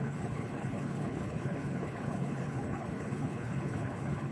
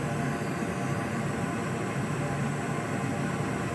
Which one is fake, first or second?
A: first